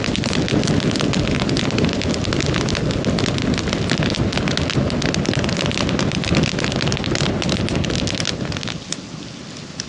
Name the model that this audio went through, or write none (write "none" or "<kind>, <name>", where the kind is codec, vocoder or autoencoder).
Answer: none